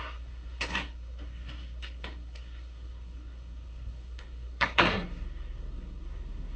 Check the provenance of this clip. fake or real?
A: fake